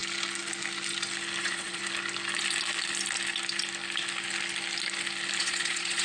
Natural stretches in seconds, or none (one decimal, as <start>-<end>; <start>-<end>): 0.0-1.4; 1.8-5.4